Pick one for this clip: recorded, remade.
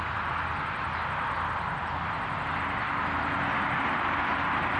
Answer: recorded